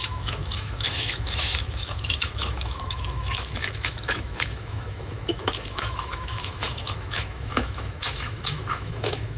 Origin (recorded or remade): remade